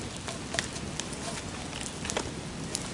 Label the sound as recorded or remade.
recorded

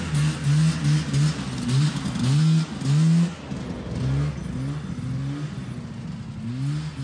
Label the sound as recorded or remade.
recorded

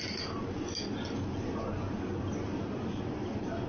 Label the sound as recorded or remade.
recorded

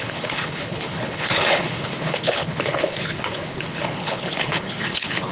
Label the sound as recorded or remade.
remade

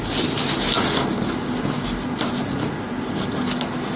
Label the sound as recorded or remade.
recorded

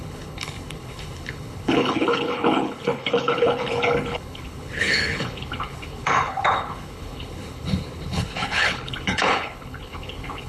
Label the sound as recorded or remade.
remade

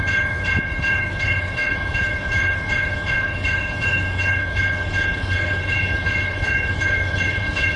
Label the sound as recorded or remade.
remade